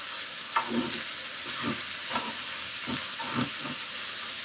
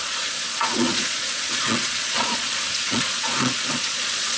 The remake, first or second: second